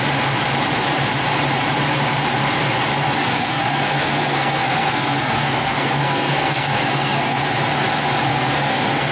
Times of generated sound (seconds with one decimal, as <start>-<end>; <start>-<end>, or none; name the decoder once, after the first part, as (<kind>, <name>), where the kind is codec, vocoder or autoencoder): 3.2-7.5 (codec, SNAC); 8.3-9.1